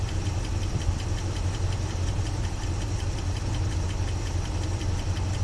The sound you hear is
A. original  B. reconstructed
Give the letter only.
A